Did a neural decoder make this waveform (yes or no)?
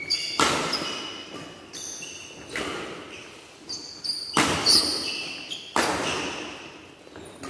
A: no